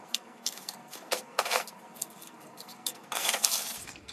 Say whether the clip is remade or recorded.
remade